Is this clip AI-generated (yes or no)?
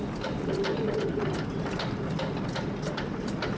no